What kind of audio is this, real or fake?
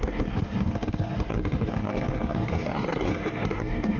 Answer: fake